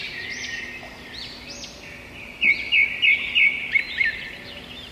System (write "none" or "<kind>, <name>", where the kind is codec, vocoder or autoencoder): none